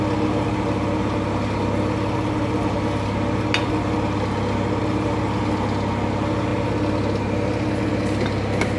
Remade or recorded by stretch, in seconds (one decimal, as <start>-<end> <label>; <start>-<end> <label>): 0.0-8.8 recorded